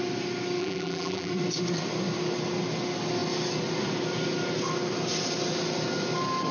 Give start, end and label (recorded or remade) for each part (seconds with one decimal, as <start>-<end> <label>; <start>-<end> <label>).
0.0-0.6 recorded; 0.6-1.3 remade; 1.3-6.5 recorded